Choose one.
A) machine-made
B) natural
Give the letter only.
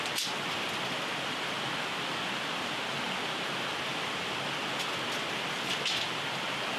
B